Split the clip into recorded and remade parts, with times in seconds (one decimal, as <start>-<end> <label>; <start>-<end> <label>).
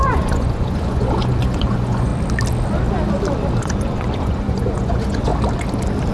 0.0-2.1 remade; 2.1-3.6 recorded; 3.6-5.3 remade; 5.3-6.1 recorded